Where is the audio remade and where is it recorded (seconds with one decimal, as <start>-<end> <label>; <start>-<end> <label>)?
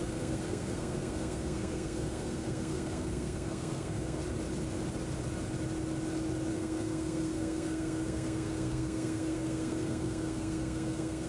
0.0-4.2 remade; 4.2-6.5 recorded; 6.5-11.3 remade